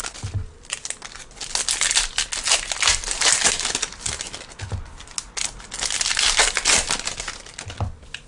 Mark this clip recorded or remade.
recorded